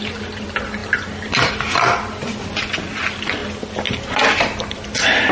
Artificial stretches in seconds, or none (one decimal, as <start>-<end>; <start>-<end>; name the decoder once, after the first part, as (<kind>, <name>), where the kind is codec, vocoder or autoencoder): none